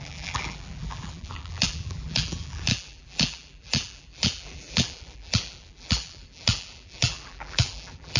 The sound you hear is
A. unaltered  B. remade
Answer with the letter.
B